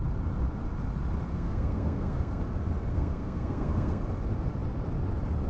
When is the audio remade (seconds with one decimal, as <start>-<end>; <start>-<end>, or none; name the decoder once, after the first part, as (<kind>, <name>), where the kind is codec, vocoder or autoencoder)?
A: 1.3-2.4 (codec, SNAC); 2.9-4.0